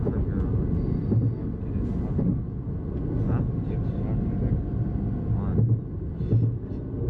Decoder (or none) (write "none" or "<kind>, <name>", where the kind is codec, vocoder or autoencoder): none